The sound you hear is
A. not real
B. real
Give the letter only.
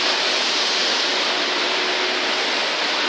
B